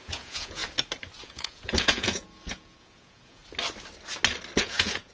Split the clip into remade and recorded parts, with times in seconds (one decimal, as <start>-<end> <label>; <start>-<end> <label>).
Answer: 0.0-0.6 remade; 0.6-1.2 recorded; 1.2-3.4 remade; 3.4-4.6 recorded; 4.6-5.1 remade